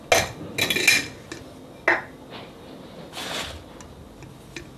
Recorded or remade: recorded